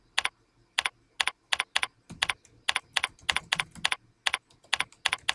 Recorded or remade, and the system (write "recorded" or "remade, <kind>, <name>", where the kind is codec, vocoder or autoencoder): recorded